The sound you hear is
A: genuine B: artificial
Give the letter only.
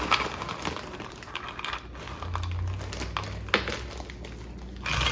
A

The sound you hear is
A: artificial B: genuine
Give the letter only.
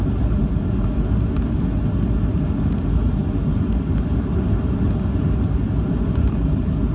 B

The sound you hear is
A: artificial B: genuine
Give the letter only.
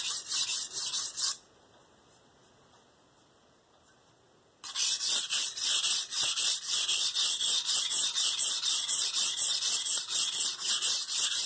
B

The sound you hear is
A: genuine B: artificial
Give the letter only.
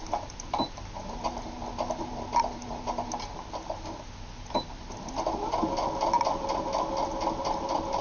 A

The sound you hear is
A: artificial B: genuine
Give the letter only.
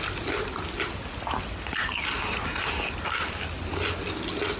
B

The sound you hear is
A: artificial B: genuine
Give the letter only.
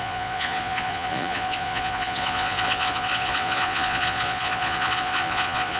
A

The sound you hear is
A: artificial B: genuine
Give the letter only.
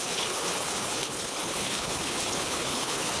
A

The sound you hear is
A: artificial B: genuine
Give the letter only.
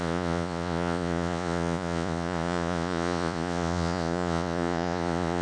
A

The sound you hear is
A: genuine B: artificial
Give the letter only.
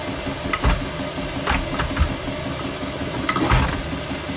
A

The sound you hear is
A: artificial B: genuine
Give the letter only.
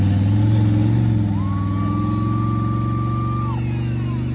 B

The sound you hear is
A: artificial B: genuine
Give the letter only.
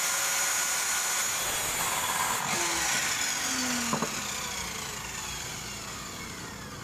B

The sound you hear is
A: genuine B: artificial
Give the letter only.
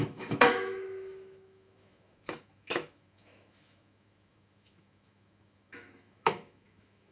B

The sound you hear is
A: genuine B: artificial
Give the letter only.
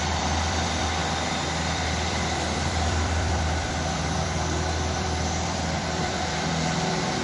B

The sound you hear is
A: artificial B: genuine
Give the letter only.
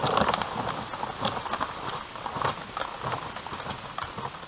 B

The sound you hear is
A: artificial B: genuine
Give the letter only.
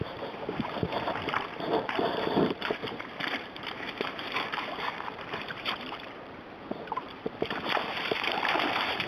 A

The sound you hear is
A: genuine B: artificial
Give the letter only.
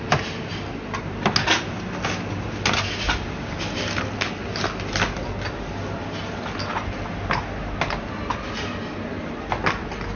A